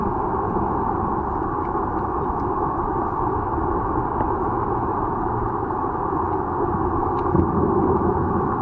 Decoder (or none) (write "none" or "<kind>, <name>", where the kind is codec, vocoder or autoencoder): none